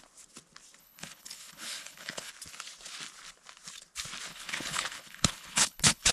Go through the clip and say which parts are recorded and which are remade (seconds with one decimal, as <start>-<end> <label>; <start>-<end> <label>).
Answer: 0.0-0.8 recorded; 0.8-2.3 remade; 2.3-4.3 recorded; 4.3-6.1 remade